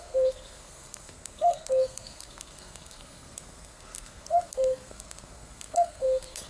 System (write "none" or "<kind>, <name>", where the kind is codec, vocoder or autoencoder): codec, SNAC